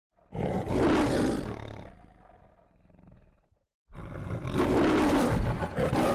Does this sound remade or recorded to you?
recorded